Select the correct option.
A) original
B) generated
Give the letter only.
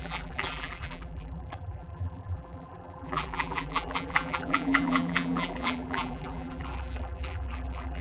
B